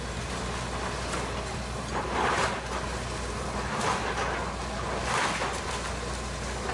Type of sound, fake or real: real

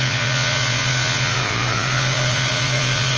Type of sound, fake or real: fake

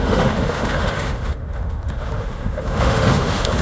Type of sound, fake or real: fake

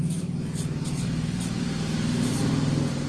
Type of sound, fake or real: real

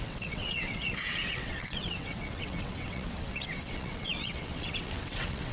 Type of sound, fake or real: fake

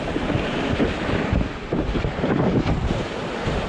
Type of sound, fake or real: real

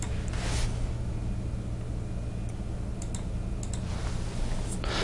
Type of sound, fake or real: real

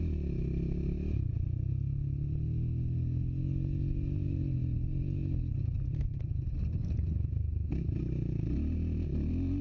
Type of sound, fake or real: real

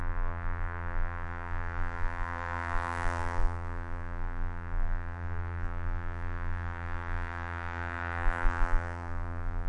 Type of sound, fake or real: fake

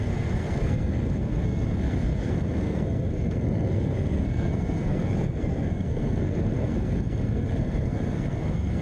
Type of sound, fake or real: fake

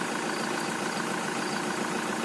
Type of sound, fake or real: real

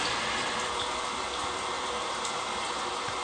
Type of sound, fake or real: real